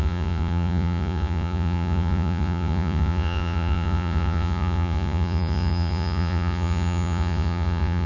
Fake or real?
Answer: fake